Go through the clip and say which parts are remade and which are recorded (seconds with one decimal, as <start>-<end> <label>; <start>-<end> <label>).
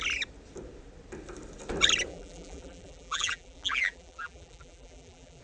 0.0-2.1 recorded; 2.1-5.4 remade